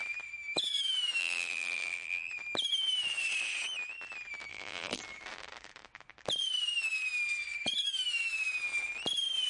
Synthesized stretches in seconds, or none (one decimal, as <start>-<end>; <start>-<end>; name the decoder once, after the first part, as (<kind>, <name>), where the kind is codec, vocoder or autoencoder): 1.2-2.3 (vocoder, BigVGAN v2); 4.5-5.0